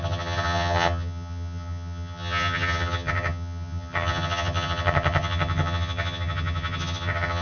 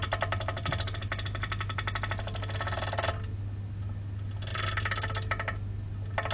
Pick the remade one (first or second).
first